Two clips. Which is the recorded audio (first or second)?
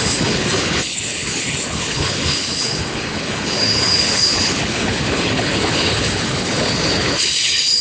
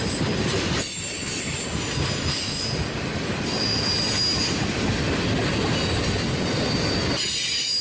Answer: second